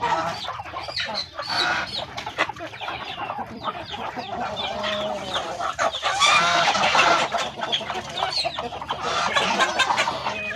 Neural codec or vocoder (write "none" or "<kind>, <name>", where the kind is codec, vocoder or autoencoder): vocoder, BigVGAN v2